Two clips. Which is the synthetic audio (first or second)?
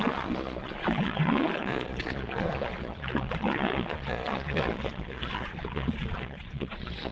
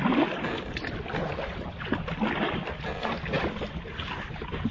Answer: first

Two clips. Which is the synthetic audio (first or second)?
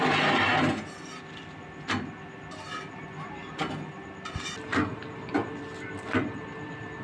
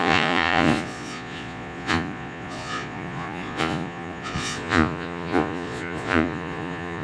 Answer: second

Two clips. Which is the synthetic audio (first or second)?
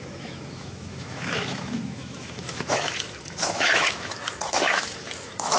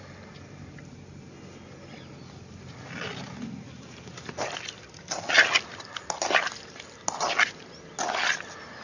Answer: first